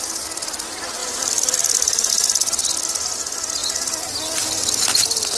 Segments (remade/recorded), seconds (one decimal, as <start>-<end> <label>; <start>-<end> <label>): 0.0-5.4 recorded